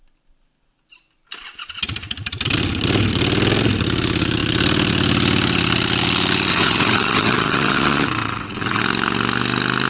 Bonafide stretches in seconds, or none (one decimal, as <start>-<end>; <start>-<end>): 0.0-6.5; 8.8-9.9